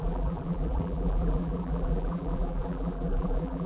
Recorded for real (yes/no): no